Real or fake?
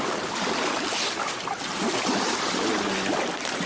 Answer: fake